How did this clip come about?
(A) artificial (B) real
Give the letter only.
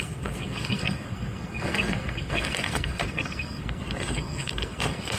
A